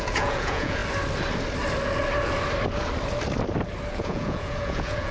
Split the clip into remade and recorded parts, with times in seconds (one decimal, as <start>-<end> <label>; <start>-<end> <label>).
0.0-0.8 remade; 0.8-3.9 recorded; 3.9-5.1 remade